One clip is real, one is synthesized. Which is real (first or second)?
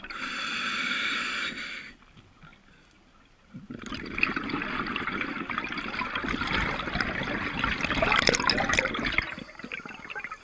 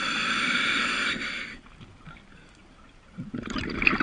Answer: first